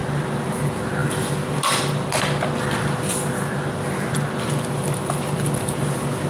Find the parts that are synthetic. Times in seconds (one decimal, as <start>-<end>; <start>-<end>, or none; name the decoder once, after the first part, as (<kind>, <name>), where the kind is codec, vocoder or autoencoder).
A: none